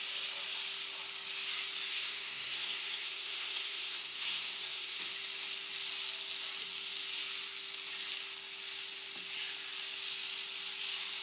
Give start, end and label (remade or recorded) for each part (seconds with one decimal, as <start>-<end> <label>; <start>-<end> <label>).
0.0-1.9 recorded; 1.9-5.0 remade; 5.0-11.2 recorded